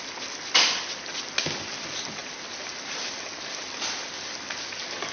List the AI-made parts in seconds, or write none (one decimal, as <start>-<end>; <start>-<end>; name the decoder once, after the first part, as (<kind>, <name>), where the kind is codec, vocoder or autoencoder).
none